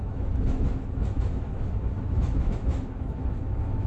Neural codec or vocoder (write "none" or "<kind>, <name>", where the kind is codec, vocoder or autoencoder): autoencoder, DAC-VAE